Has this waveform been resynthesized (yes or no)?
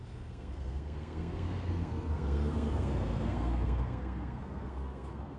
yes